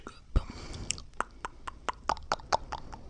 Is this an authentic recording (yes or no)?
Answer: yes